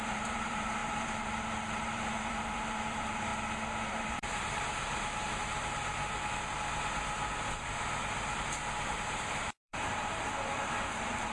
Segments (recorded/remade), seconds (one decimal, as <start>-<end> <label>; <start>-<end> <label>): 0.0-3.3 remade; 3.3-3.9 recorded; 3.9-5.8 remade; 5.8-8.9 recorded; 8.9-11.3 remade